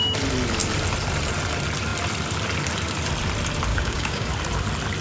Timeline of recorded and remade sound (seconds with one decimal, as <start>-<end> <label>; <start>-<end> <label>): 0.0-3.7 recorded; 3.7-4.3 remade; 4.3-5.0 recorded

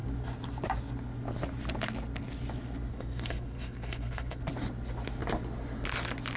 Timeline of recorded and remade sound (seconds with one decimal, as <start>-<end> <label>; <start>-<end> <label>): 0.0-2.9 recorded; 2.9-4.4 remade; 4.4-6.4 recorded